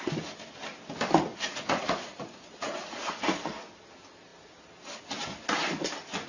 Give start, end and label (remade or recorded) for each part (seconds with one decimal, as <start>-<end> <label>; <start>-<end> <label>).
0.0-1.3 recorded; 1.3-3.2 remade; 3.2-6.3 recorded